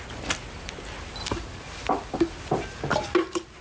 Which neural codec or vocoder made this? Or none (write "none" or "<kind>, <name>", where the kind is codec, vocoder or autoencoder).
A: none